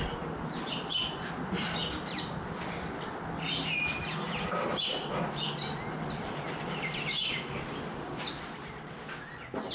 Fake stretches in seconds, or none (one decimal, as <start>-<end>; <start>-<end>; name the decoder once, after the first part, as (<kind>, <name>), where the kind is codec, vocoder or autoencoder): none